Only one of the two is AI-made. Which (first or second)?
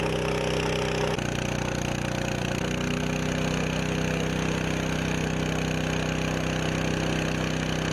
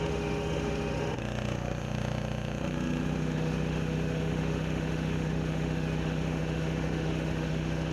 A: second